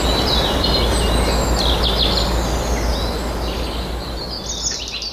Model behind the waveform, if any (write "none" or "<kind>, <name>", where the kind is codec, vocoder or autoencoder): none